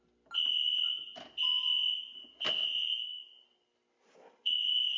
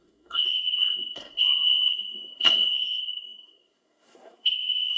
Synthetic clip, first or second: second